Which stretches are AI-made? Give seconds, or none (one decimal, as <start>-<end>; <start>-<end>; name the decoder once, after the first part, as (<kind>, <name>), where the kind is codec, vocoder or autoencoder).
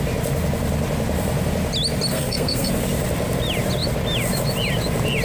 2.1-2.7 (codec, SNAC)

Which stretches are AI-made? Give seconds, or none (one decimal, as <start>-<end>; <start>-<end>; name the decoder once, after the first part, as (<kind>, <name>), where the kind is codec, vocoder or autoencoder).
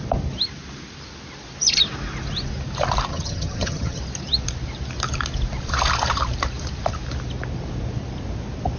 3.1-4.0 (vocoder, HiFi-GAN)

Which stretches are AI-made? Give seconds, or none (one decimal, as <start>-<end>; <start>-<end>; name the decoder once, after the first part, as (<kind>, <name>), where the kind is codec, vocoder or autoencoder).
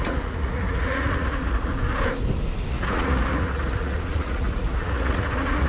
0.0-1.7 (vocoder, Vocos); 2.7-5.7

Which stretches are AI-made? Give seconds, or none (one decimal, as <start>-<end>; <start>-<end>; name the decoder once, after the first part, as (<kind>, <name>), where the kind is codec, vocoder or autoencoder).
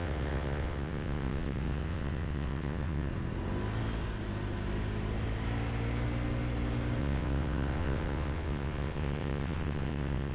0.0-3.1 (vocoder, WaveNeXt); 7.0-10.3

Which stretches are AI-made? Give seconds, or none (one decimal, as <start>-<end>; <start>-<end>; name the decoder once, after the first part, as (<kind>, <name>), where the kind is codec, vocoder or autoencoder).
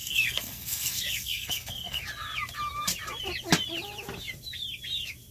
0.0-2.0 (codec, SNAC)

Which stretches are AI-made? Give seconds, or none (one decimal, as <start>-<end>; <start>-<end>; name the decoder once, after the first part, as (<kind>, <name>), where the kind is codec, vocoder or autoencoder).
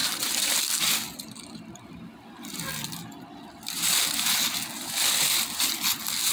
none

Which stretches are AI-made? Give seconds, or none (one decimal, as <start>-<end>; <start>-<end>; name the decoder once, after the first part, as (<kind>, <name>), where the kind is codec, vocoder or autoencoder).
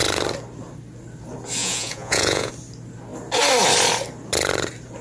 1.6-2.5 (vocoder, Vocos)